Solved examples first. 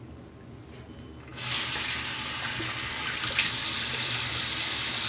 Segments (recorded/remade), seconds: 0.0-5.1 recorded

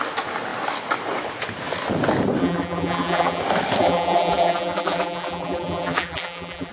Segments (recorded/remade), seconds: 0.0-2.4 recorded; 2.4-3.4 remade; 3.4-3.8 recorded; 3.8-6.7 remade